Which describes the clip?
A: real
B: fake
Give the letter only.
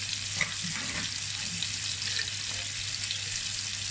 A